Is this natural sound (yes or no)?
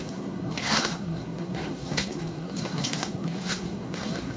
no